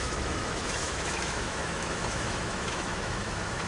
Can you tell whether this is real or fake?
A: fake